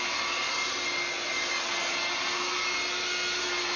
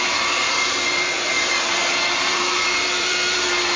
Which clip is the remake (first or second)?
second